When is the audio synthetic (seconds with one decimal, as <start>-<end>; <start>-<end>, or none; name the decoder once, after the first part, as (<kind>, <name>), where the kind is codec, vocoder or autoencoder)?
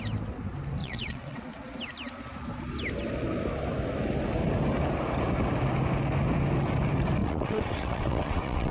0.8-1.4 (vocoder, WaveNeXt); 7.2-8.7